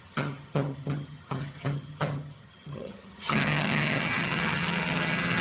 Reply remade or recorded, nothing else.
remade